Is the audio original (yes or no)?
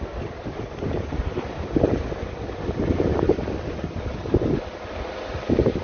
yes